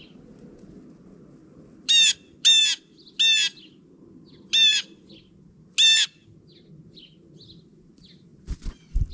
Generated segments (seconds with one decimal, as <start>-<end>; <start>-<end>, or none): none